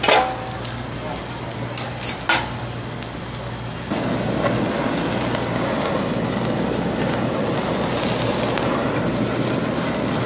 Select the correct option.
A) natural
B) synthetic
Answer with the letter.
A